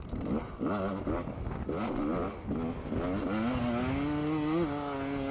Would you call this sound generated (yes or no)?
no